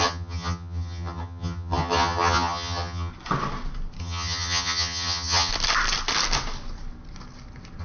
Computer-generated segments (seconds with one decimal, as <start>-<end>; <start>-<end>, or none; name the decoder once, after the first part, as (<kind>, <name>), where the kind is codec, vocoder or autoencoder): 0.0-3.1 (vocoder, HiFi-GAN); 4.0-5.5